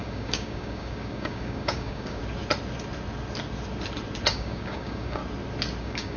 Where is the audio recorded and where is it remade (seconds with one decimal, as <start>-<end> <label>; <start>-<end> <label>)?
0.0-2.2 remade; 2.2-4.3 recorded; 4.3-5.2 remade; 5.2-5.8 recorded; 5.8-6.2 remade